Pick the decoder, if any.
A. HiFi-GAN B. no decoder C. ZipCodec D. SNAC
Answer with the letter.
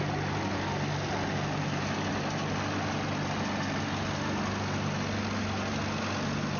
B